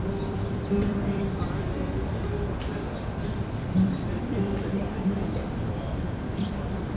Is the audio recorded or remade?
remade